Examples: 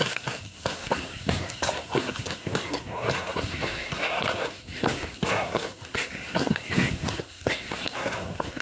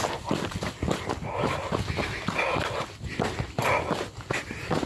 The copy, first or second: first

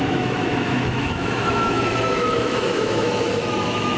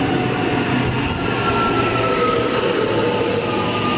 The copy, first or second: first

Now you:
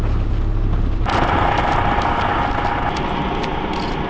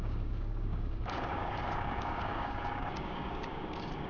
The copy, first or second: second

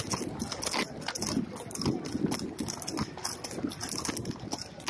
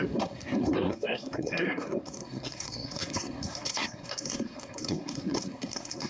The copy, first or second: second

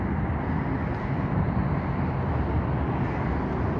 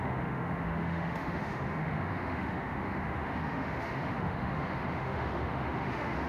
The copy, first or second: second